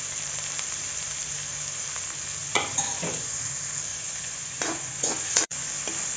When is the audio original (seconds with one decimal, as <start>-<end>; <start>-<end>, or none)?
0.0-2.4; 3.5-3.9; 5.7-6.2